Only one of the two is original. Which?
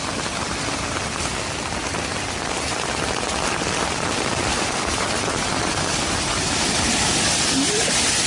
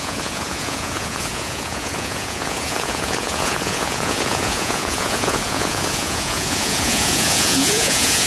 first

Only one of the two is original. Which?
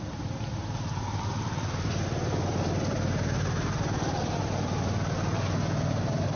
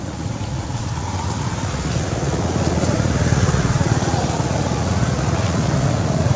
first